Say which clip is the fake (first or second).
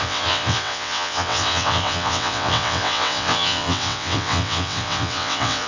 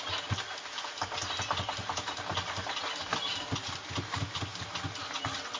first